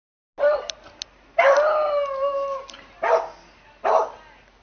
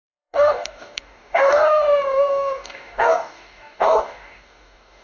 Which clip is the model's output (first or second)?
second